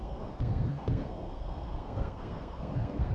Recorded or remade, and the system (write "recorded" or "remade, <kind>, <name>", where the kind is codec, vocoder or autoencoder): remade, codec, SNAC